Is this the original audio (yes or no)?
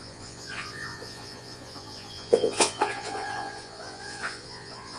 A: no